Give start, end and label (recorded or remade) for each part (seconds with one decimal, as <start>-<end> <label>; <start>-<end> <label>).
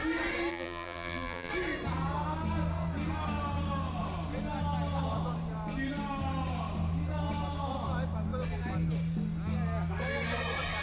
0.0-0.5 recorded; 0.5-1.5 remade; 1.5-10.8 recorded